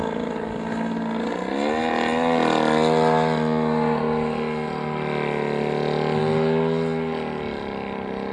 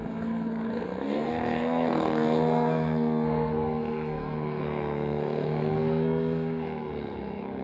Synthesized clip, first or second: second